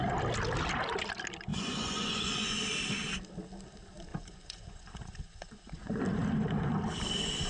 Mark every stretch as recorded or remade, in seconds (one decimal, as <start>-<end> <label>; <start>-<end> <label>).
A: 0.0-1.5 recorded; 1.5-2.6 remade; 2.6-4.1 recorded; 4.1-6.0 remade; 6.0-7.5 recorded